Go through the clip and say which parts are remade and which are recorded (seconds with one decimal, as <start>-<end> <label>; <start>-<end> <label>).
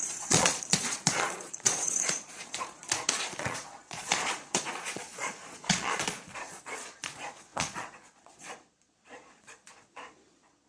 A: 0.0-10.7 remade